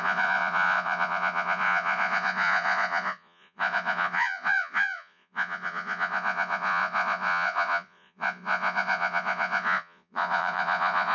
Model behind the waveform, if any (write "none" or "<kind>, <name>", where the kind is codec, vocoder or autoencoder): vocoder, Vocos